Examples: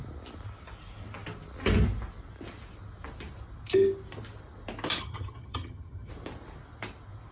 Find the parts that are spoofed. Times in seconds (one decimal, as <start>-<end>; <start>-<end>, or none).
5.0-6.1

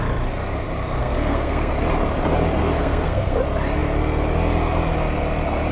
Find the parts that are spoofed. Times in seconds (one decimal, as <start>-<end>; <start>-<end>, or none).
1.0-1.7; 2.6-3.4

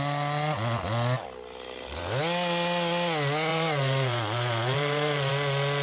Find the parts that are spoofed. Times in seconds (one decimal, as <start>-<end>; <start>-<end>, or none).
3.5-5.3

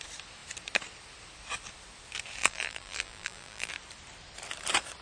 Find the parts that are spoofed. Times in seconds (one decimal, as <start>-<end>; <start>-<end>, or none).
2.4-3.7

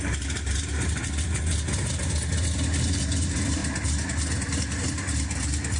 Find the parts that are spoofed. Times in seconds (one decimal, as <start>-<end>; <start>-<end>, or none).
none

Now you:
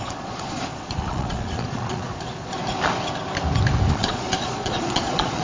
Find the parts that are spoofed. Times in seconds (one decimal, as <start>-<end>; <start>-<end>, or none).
0.0-2.6; 3.9-5.4

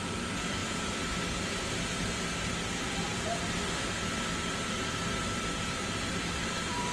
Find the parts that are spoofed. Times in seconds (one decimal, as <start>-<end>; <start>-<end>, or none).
0.0-0.6; 4.7-6.9